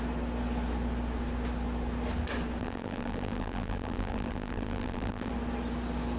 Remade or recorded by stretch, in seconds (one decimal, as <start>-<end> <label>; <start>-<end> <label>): 0.0-2.6 recorded; 2.6-5.3 remade; 5.3-6.2 recorded